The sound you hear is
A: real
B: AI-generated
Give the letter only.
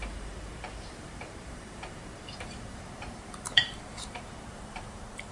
B